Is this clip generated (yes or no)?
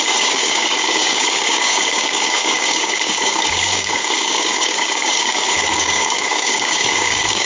yes